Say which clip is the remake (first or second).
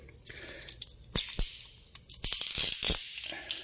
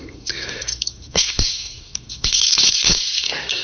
second